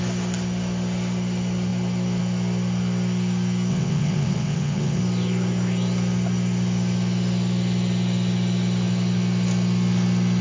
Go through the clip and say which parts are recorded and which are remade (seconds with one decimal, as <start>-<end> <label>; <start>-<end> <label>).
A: 0.0-3.7 recorded; 3.7-5.0 remade; 5.0-10.4 recorded